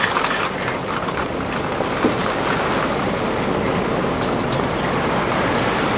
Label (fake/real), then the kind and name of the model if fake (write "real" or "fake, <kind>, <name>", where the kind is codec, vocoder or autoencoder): real